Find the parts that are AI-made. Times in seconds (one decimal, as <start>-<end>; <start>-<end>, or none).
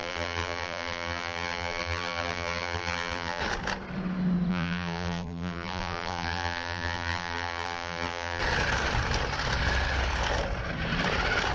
0.0-3.4; 4.5-8.4